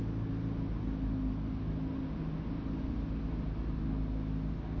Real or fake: real